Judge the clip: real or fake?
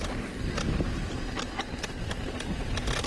real